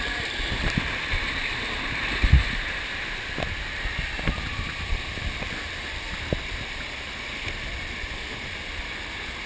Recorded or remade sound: recorded